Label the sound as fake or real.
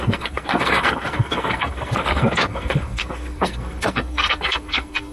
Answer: fake